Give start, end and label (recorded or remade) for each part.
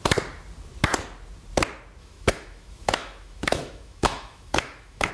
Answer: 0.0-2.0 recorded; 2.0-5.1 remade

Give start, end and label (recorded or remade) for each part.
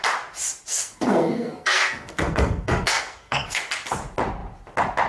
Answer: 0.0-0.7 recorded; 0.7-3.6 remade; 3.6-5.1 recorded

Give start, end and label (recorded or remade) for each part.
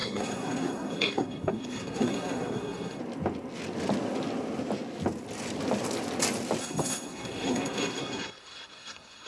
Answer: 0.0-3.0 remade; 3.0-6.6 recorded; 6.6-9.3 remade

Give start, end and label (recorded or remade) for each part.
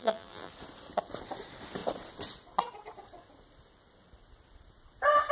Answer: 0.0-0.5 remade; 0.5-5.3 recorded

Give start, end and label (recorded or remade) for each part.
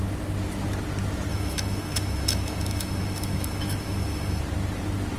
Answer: 0.0-1.3 recorded; 1.3-4.4 remade; 4.4-5.2 recorded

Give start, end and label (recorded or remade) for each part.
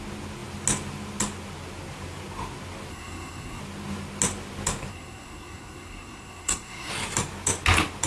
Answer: 0.0-2.9 recorded; 2.9-3.6 remade; 3.6-4.9 recorded; 4.9-6.9 remade; 6.9-8.1 recorded